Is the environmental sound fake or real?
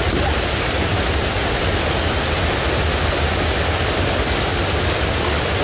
real